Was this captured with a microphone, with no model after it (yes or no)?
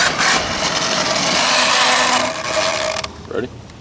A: yes